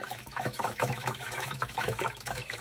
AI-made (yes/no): yes